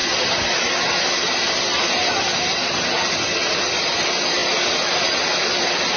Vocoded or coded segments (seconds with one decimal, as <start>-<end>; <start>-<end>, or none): none